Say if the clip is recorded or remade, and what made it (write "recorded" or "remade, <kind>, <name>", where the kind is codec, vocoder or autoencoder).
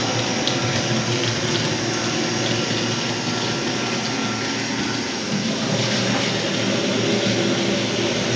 recorded